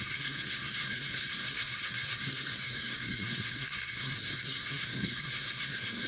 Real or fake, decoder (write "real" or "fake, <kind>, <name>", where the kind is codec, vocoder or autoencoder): fake, codec, SNAC